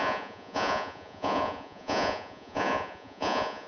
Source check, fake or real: fake